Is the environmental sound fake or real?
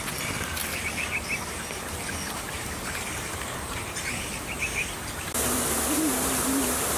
real